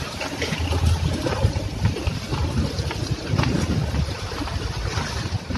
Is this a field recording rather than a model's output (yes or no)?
yes